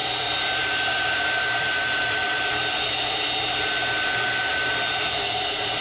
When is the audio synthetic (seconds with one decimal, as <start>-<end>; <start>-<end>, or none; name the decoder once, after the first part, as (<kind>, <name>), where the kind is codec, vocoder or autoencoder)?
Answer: 0.0-3.5 (vocoder, BigVGAN v2); 4.5-5.8